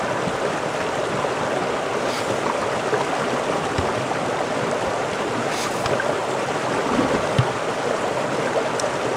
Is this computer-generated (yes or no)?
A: no